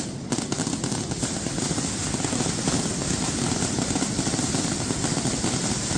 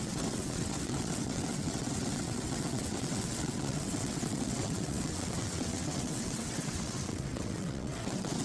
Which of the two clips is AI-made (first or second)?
second